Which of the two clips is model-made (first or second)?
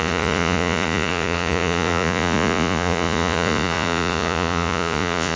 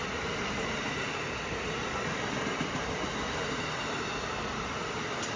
first